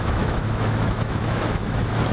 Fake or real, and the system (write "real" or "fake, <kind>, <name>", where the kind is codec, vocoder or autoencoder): fake, autoencoder, DAC-VAE